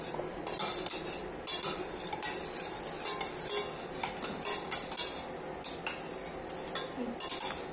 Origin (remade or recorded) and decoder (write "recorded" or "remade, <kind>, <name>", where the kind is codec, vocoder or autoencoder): recorded